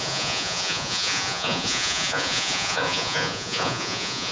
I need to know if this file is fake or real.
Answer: fake